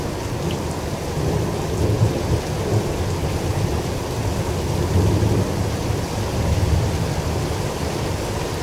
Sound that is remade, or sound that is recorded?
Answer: recorded